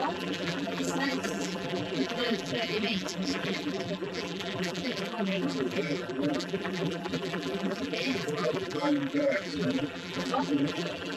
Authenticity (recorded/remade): remade